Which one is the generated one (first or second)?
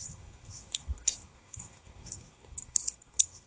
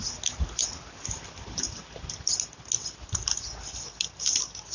first